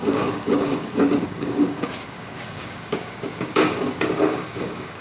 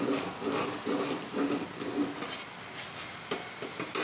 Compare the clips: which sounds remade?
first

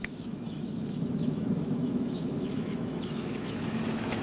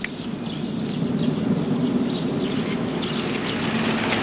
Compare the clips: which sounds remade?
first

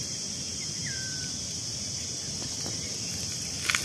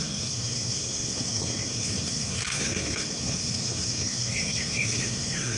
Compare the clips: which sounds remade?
second